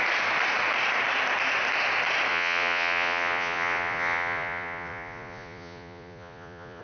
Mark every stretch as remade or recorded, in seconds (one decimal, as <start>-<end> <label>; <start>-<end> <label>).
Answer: 0.0-2.3 recorded; 2.3-6.8 remade